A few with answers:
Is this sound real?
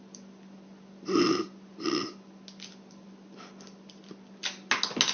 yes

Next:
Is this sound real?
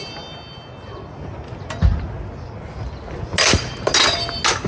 yes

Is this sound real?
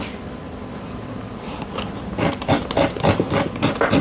yes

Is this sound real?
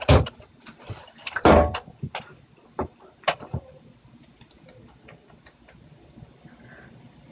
yes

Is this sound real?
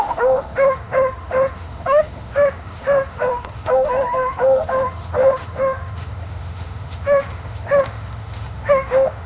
no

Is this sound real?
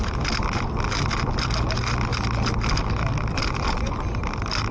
yes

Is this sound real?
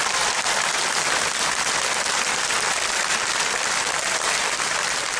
yes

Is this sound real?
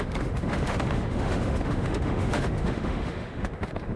no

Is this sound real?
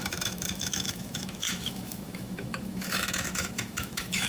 no